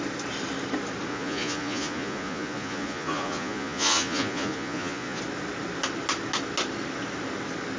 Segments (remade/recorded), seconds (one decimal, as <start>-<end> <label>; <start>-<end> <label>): 0.0-1.1 recorded; 1.1-5.2 remade; 5.2-7.8 recorded